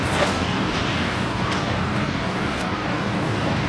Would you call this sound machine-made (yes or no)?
yes